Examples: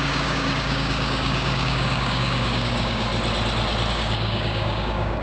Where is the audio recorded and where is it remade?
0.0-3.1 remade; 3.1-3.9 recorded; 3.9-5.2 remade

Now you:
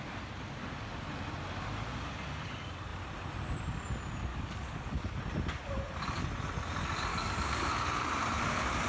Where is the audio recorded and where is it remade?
0.0-4.3 recorded; 4.3-5.2 remade; 5.2-7.1 recorded; 7.1-7.7 remade; 7.7-8.9 recorded

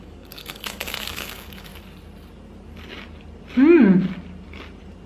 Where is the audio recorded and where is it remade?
0.0-1.7 remade; 1.7-5.1 recorded